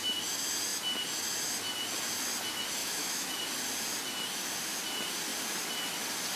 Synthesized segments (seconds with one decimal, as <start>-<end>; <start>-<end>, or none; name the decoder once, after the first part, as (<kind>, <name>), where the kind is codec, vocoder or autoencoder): 2.8-3.4 (autoencoder, DAC-VAE)